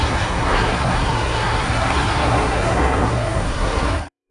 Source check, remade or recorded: remade